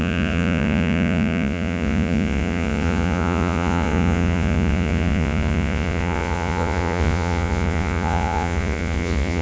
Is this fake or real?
fake